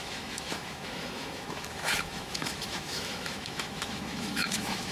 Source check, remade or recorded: remade